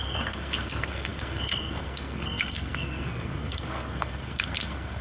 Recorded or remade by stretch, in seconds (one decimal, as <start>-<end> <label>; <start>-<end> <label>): 0.0-5.0 remade